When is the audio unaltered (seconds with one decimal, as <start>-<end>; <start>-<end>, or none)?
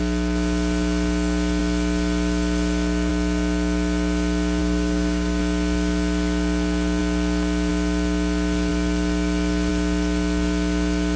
0.0-4.6; 5.4-11.2